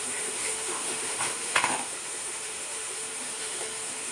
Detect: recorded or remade remade